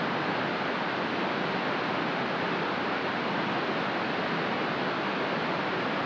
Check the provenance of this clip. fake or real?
real